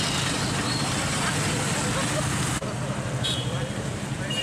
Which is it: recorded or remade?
recorded